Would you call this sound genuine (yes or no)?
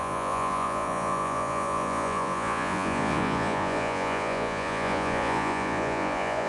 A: no